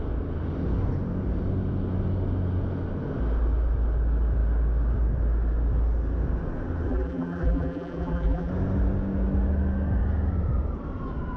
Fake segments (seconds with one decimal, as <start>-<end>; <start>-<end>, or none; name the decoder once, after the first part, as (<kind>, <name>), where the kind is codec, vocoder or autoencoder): 6.9-8.5 (vocoder, BigVGAN v2)